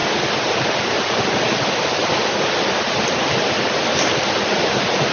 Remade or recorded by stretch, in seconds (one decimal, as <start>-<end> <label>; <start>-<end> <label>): 0.0-5.1 recorded